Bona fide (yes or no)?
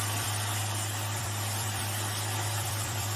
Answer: no